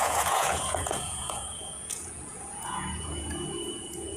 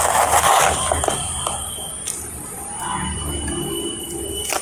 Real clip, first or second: second